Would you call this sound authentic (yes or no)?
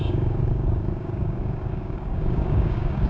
no